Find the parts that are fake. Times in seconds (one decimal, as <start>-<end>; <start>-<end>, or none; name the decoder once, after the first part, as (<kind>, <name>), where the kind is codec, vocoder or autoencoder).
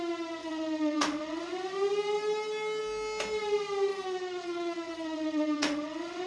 0.4-1.5 (vocoder, WaveNeXt); 3.9-6.3